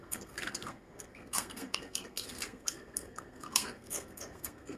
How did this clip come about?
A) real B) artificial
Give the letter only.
B